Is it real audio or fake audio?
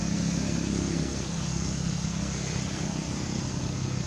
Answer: fake